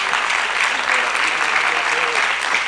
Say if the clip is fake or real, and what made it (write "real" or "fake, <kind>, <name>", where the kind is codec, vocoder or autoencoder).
real